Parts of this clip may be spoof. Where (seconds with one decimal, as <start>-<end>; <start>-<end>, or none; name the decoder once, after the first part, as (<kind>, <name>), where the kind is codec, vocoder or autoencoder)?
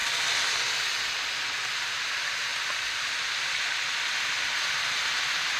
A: none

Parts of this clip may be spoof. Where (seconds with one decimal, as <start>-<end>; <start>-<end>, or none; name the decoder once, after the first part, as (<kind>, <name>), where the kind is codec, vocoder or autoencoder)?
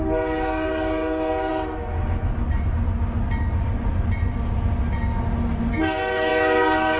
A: 0.0-1.5 (codec, DAC); 5.7-7.0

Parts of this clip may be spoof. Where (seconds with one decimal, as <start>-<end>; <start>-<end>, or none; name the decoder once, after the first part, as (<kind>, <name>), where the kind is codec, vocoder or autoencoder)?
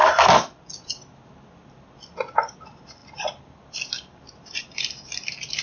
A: none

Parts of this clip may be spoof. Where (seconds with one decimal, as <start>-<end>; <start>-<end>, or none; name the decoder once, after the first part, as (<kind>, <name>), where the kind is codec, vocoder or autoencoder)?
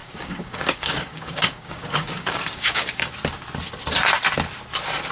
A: 0.0-3.1 (codec, DAC)